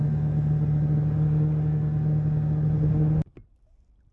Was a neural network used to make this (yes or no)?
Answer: no